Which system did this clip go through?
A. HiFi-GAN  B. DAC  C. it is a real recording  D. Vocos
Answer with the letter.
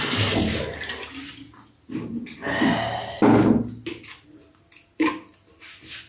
C